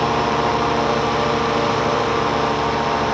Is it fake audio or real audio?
fake